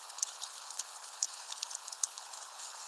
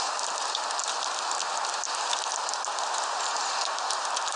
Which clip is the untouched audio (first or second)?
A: second